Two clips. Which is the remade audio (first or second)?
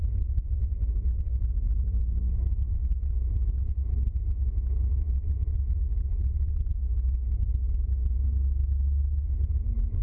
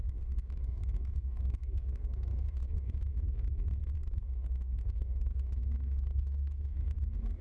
second